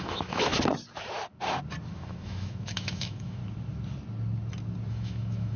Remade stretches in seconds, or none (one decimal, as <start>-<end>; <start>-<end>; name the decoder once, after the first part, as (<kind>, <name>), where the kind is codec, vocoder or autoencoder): 0.0-0.5 (autoencoder, DAC-VAE); 1.9-3.4; 4.9-5.6